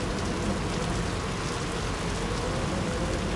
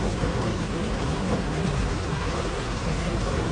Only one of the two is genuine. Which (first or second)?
first